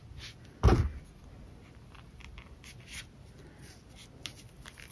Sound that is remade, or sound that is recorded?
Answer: recorded